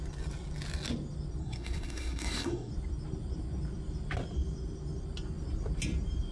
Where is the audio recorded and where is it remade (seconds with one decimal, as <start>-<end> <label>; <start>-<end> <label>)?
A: 0.0-1.4 recorded; 1.4-2.7 remade; 2.7-6.3 recorded